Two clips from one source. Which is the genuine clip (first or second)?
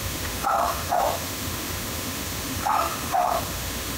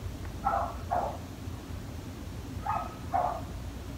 second